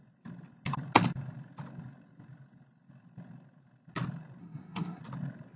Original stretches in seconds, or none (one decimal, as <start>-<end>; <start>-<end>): 0.0-4.4; 5.0-5.6